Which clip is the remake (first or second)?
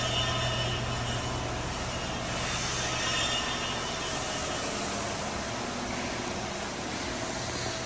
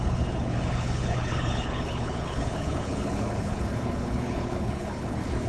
second